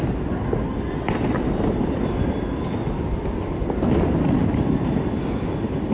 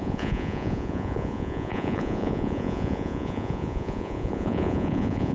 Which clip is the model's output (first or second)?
second